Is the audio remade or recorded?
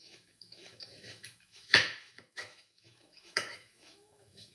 remade